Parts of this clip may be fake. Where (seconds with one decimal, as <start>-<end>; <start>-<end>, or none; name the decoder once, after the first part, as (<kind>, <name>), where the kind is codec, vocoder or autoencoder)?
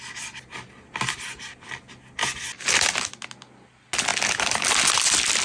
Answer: none